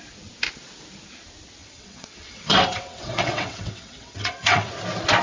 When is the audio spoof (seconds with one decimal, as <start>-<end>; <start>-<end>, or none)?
1.6-4.7